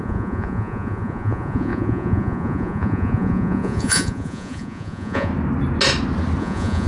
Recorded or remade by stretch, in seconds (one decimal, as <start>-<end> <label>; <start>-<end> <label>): 0.0-5.3 remade; 5.3-6.4 recorded; 6.4-6.9 remade